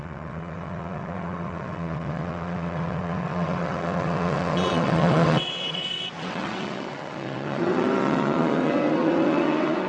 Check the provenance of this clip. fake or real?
fake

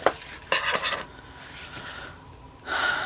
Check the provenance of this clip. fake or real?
real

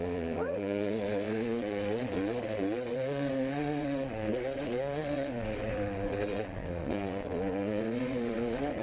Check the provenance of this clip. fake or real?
fake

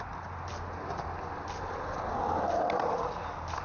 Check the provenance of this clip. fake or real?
real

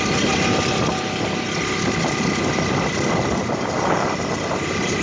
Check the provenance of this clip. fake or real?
real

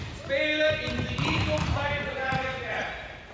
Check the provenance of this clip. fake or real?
real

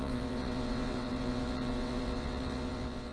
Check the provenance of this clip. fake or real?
fake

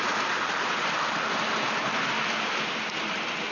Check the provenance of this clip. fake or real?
real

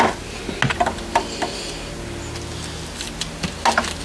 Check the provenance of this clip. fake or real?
real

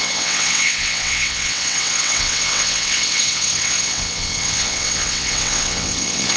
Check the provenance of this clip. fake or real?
fake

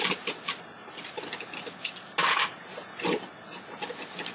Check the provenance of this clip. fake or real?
real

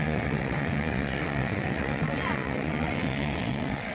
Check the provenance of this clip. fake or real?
fake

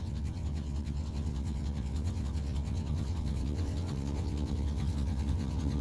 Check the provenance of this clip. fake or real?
fake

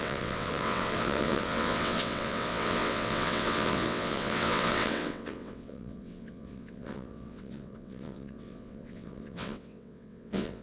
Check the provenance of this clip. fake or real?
fake